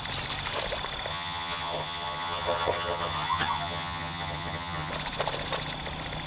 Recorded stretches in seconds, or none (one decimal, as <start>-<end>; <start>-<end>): 0.0-1.1; 4.9-6.3